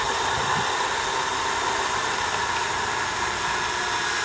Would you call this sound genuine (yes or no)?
yes